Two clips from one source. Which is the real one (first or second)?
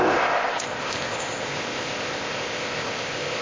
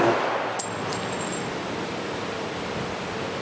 second